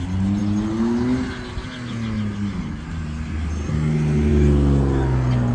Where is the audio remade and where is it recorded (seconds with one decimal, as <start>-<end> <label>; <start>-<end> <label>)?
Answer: 0.0-5.5 recorded